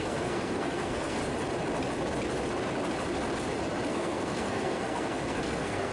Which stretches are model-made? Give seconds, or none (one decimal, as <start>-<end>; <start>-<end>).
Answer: 0.0-1.2; 3.9-5.9